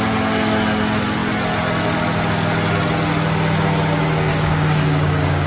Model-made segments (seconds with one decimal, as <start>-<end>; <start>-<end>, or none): 4.3-5.5